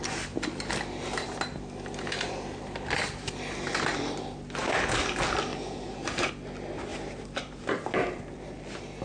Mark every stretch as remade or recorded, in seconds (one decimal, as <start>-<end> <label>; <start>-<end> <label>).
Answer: 0.0-5.5 recorded; 5.5-6.3 remade; 6.3-6.9 recorded; 6.9-8.2 remade; 8.2-9.0 recorded